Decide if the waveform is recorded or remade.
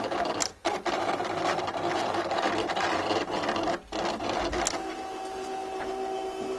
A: recorded